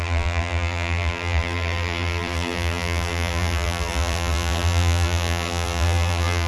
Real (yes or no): no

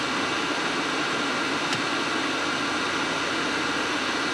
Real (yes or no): yes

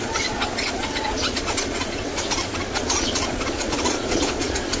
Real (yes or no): no